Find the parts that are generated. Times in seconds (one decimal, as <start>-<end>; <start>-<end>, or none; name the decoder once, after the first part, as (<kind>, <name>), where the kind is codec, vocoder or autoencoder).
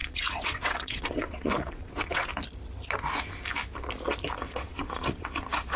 0.0-2.3 (vocoder, WaveNeXt); 4.4-5.8